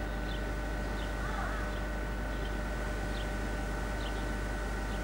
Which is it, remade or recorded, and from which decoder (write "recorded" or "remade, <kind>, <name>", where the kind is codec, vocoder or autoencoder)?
recorded